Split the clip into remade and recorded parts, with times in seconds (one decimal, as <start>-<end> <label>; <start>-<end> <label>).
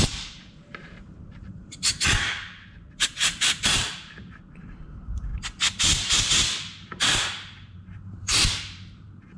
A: 0.0-5.3 remade; 5.3-7.0 recorded; 7.0-9.4 remade